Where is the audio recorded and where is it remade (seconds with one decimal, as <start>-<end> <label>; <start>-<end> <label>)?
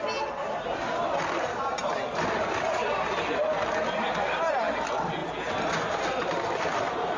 0.0-7.2 recorded